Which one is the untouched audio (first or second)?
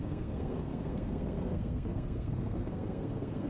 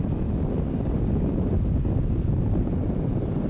second